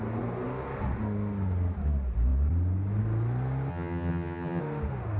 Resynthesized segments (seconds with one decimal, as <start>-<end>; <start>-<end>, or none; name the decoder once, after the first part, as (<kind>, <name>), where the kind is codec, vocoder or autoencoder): 3.7-4.6 (vocoder, HiFi-GAN)